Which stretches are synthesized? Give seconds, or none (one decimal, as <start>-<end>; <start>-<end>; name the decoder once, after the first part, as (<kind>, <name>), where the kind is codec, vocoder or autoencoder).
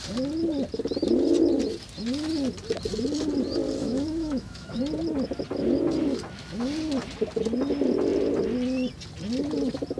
3.8-4.8 (autoencoder, DAC-VAE)